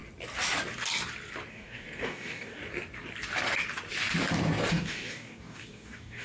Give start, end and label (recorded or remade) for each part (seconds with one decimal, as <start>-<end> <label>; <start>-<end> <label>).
0.0-1.5 recorded; 1.5-2.6 remade; 2.6-4.7 recorded; 4.7-6.2 remade